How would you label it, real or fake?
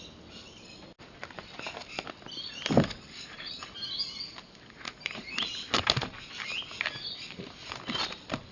real